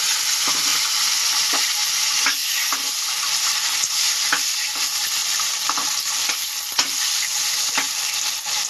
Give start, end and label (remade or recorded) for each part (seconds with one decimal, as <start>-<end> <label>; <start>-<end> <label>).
0.0-8.7 recorded